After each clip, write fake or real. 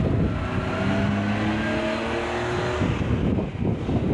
real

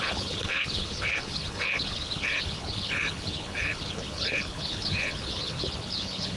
fake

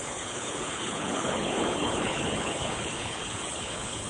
fake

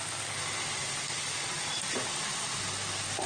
real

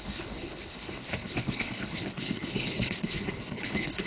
fake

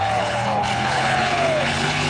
fake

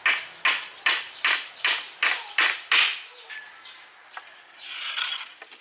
real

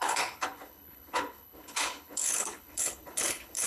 fake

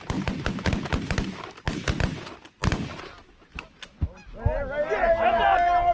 real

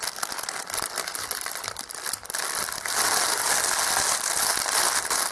real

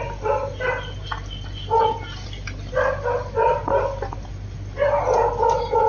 real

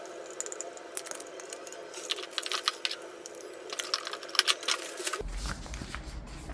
real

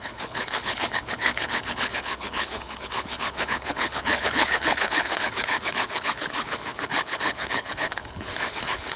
fake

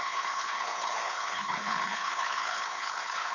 fake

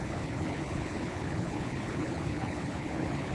fake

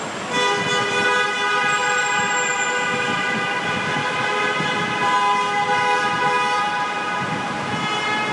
real